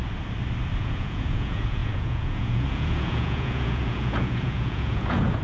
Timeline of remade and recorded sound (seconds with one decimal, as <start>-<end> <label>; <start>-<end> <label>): 0.0-0.8 recorded; 0.8-5.4 remade